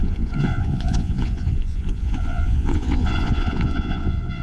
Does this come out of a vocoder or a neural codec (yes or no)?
yes